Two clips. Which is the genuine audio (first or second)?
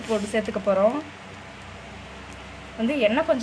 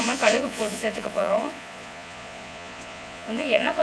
first